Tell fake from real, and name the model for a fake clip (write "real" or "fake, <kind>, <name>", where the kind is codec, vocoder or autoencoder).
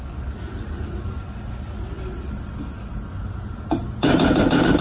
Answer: real